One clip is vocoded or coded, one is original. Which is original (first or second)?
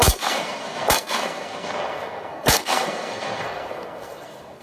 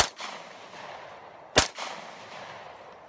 second